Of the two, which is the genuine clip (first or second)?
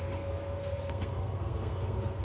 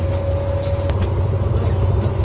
second